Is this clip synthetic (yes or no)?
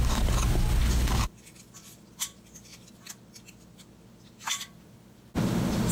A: no